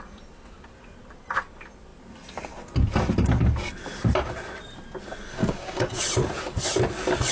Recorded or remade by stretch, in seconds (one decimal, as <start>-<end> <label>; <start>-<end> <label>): 0.0-5.4 recorded; 5.4-6.0 remade; 6.0-7.3 recorded